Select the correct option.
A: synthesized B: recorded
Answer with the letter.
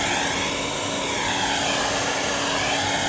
B